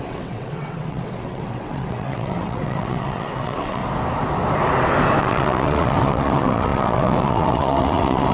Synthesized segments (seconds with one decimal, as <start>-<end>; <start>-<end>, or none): 0.0-3.8; 5.2-8.3